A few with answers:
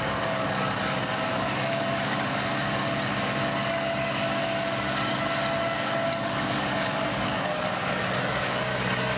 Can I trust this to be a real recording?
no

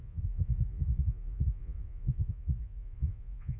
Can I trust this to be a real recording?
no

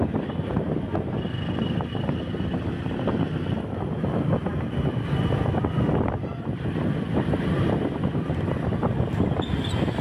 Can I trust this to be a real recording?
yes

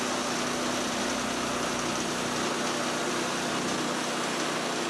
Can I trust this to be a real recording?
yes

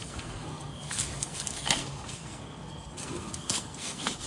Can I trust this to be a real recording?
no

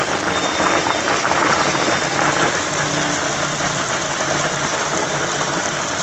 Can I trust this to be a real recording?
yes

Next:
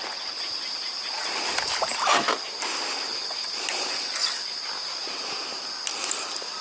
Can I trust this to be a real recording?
yes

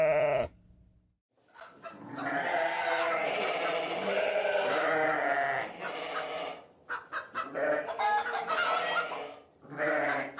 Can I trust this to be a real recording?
yes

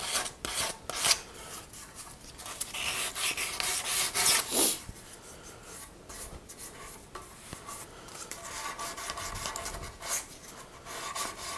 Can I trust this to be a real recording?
yes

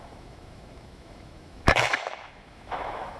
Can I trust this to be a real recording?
no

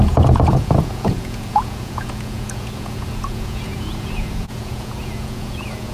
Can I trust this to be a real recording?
no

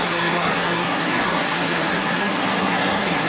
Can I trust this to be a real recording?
no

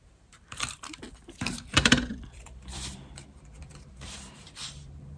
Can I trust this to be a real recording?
no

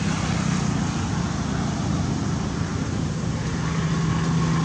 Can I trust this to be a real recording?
yes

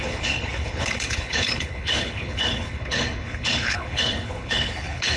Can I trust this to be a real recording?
no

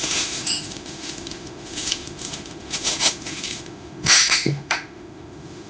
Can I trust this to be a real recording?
no